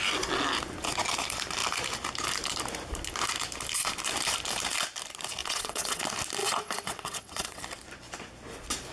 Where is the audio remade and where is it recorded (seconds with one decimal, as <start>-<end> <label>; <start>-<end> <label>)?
0.0-5.4 recorded; 5.4-6.0 remade; 6.0-6.4 recorded; 6.4-7.6 remade; 7.6-8.9 recorded